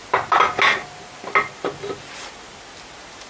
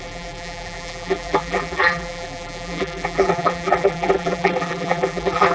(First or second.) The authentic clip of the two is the first